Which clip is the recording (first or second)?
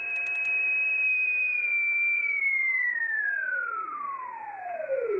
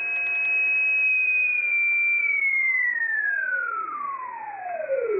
second